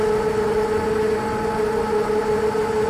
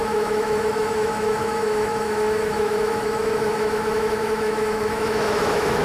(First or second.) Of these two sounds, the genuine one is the first